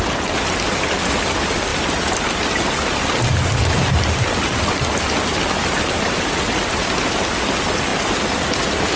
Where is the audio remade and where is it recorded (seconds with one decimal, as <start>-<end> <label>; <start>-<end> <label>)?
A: 0.0-9.0 recorded